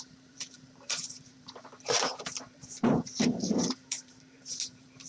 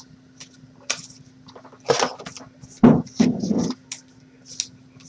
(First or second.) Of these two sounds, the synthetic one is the first